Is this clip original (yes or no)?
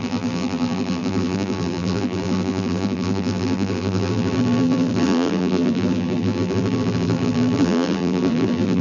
no